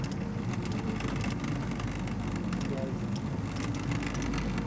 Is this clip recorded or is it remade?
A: recorded